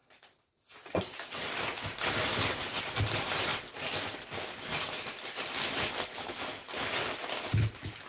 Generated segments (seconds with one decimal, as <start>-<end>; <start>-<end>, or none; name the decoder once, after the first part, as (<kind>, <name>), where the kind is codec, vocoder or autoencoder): 0.0-2.3 (vocoder, BigVGAN v2); 2.9-3.5